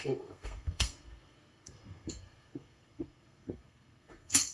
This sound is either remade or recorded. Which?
remade